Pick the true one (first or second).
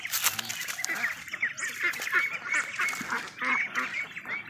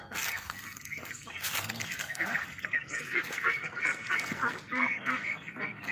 first